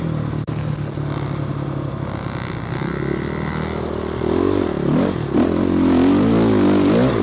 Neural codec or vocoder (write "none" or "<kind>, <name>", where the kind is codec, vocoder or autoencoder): none